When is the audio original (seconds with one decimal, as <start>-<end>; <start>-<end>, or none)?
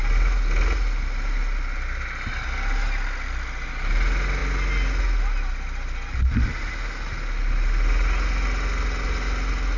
0.0-9.8